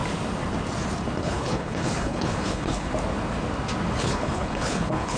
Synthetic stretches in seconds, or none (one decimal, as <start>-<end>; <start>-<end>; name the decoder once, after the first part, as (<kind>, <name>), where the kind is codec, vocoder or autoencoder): 1.2-2.9 (codec, HILCodec); 4.0-5.2